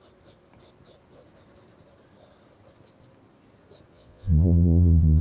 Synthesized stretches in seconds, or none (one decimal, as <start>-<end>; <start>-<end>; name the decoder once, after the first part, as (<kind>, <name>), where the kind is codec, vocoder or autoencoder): 3.9-5.2 (vocoder, Vocos)